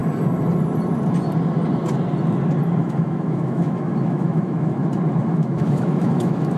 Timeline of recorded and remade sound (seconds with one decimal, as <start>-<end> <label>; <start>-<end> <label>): 0.0-2.8 recorded; 2.8-4.8 remade; 4.8-5.3 recorded; 5.3-6.6 remade